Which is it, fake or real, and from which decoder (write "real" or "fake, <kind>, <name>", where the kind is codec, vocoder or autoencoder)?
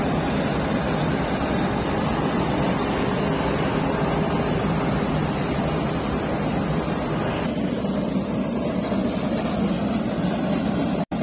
fake, vocoder, BigVGAN v2